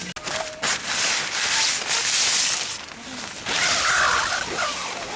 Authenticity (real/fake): real